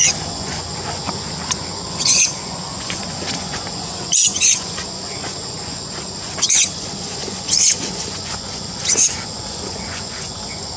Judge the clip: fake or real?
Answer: fake